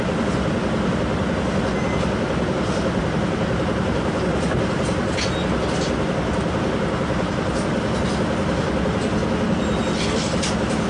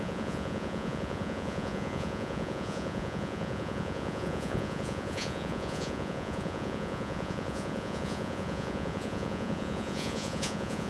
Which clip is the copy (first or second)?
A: second